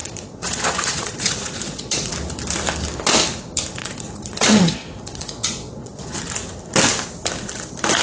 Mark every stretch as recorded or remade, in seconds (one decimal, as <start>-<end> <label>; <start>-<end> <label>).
0.0-2.1 remade; 2.1-3.8 recorded; 3.8-6.2 remade; 6.2-8.0 recorded